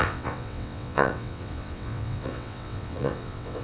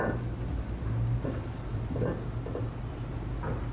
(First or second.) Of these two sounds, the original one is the second